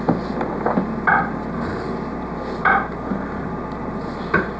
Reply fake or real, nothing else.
real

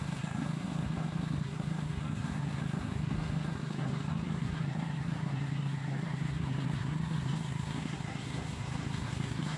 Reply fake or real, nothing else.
fake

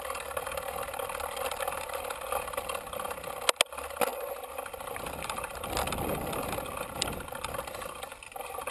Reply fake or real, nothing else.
real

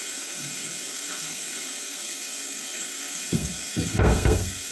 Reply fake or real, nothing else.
fake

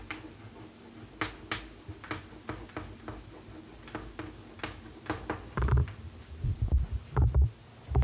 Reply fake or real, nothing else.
real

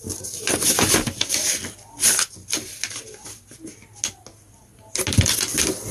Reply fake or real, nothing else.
real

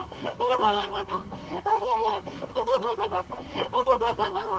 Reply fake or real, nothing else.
fake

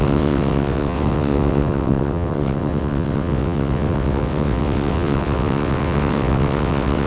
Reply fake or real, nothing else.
fake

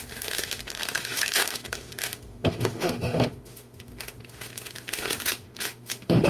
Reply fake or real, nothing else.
fake